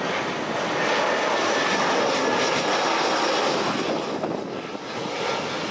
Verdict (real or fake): real